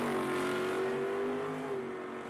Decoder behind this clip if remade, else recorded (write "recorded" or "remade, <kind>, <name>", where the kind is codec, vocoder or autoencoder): recorded